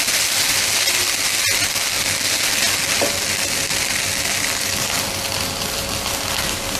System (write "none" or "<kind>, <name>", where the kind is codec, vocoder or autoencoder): none